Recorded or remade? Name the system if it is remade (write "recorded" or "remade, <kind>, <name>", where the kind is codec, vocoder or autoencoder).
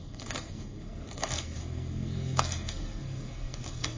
remade, codec, SNAC